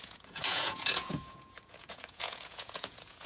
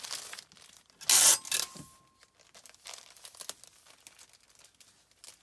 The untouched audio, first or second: second